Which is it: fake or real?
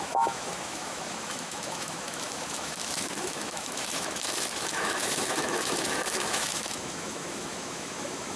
fake